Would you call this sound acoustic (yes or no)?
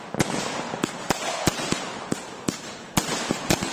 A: yes